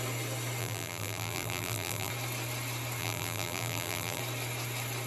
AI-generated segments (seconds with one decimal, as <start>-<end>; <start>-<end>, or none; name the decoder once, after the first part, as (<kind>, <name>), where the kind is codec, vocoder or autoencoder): 0.6-2.1 (vocoder, BigVGAN v2); 3.0-4.2

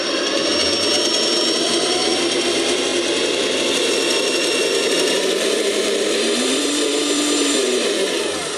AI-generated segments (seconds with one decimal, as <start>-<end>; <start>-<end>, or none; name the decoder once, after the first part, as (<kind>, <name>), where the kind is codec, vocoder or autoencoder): 0.0-0.5 (vocoder, BigVGAN v2); 1.6-8.6

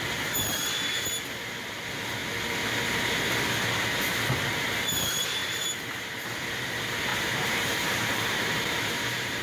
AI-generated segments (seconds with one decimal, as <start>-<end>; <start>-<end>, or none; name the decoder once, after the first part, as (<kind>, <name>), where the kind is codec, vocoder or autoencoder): 5.4-6.3 (vocoder, BigVGAN v2); 7.1-9.4

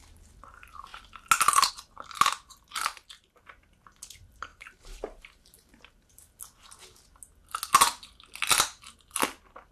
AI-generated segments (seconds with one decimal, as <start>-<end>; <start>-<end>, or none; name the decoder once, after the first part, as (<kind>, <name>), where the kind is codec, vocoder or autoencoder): 2.9-3.4 (vocoder, BigVGAN v2); 4.5-6.1

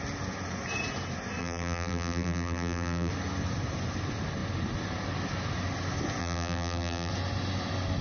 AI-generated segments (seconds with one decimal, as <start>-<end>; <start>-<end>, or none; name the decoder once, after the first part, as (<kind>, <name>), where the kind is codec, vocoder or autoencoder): 1.4-3.1 (vocoder, BigVGAN v2); 6.2-7.1

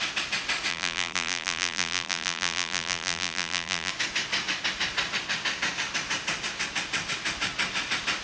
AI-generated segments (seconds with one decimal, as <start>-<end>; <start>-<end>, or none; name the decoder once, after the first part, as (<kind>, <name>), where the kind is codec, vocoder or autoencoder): 0.7-3.9 (vocoder, BigVGAN v2)

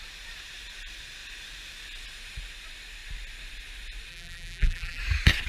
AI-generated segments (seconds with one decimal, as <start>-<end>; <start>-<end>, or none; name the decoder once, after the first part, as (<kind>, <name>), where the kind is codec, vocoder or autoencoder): 4.1-5.0 (vocoder, BigVGAN v2)

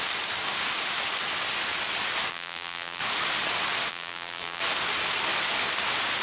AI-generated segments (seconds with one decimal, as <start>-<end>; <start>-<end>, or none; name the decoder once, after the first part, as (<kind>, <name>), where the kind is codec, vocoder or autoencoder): 2.3-3.0 (vocoder, BigVGAN v2); 3.9-4.6